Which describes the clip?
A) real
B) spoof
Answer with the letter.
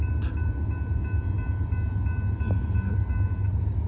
A